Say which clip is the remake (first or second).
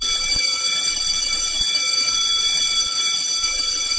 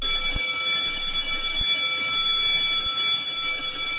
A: first